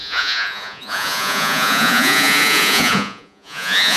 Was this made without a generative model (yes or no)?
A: no